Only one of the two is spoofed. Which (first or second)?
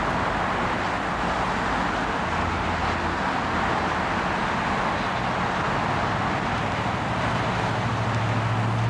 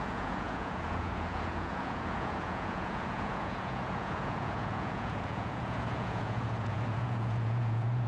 second